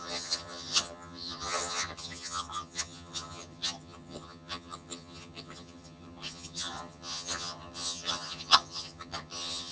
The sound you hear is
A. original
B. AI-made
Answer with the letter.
B